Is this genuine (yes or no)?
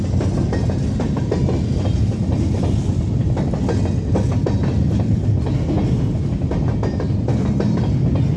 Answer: yes